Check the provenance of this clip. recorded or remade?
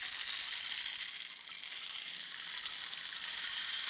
recorded